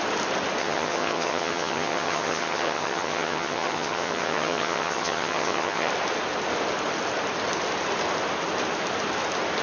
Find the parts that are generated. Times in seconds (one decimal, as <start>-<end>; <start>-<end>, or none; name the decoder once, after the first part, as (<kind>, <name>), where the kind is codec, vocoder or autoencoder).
0.6-5.9 (vocoder, HiFi-GAN)